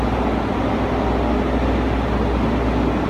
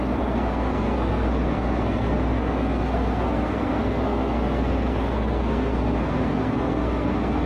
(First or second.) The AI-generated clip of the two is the second